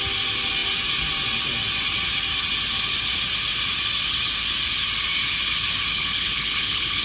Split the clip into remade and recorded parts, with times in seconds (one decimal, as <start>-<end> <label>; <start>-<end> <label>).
0.0-5.9 recorded; 5.9-7.0 remade